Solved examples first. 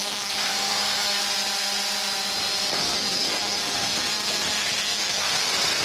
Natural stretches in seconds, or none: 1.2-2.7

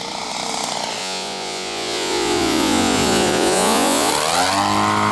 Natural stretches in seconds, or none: 0.0-1.0; 4.1-5.1

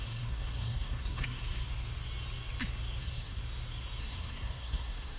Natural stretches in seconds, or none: 1.4-3.0; 3.4-4.0

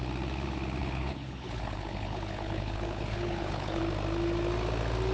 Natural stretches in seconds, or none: 0.0-0.8; 3.8-5.1

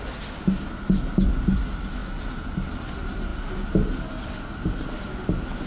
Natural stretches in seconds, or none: 0.0-5.7

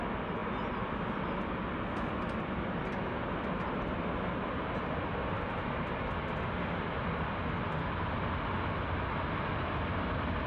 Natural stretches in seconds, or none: 0.0-10.5